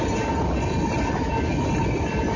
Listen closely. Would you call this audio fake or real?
real